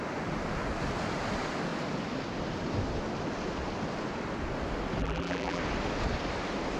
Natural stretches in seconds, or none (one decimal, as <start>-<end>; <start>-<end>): 0.0-5.0; 5.6-6.8